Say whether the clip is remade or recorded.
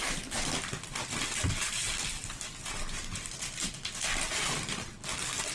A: recorded